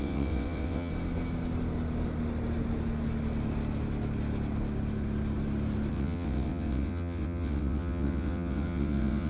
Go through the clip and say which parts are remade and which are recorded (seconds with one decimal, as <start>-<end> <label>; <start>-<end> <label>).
0.0-0.9 remade; 0.9-5.9 recorded; 5.9-9.3 remade